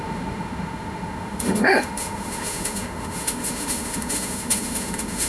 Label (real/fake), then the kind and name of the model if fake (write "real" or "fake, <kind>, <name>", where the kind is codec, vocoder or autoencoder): fake, autoencoder, DAC-VAE